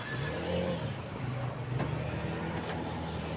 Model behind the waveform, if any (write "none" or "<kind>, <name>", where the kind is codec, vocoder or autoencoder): none